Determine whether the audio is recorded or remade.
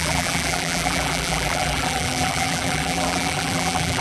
remade